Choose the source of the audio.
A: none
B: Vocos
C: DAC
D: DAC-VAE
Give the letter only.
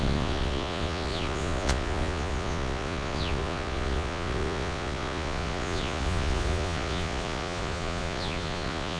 B